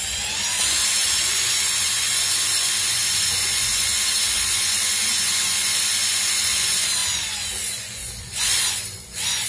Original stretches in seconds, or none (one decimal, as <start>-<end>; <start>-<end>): none